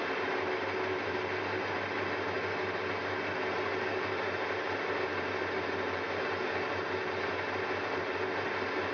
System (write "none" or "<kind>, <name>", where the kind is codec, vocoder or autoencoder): none